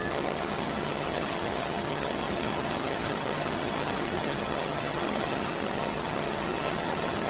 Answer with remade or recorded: remade